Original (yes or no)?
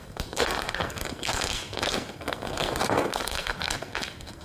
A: no